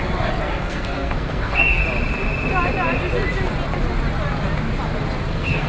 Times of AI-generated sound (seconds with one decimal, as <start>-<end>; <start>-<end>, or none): 0.0-1.8; 5.2-5.7